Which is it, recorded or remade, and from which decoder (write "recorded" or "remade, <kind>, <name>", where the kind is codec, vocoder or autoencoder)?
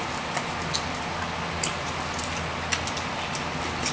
recorded